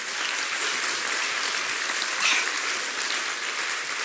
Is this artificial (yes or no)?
no